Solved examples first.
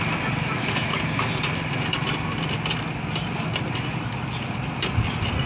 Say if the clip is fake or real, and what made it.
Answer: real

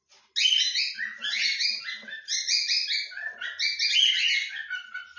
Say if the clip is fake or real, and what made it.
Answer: real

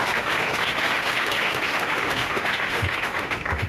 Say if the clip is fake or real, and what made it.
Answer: fake, autoencoder, DAC-VAE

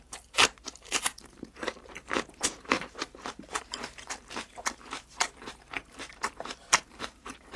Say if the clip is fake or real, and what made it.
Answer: fake, vocoder, BigVGAN v2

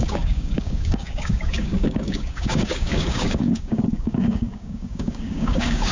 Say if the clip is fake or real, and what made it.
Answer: fake, codec, DAC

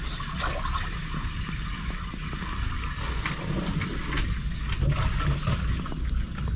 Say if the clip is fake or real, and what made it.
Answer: real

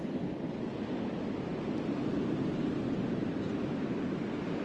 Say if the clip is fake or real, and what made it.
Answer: real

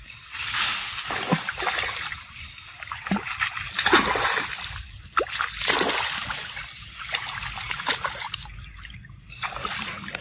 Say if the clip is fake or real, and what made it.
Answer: real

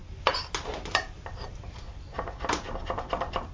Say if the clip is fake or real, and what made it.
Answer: real